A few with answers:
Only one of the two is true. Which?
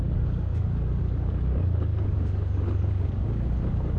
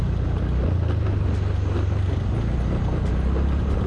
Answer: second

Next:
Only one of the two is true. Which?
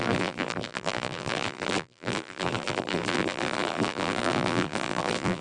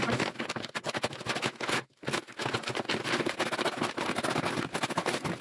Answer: second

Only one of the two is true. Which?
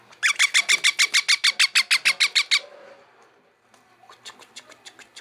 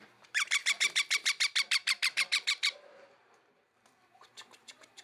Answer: first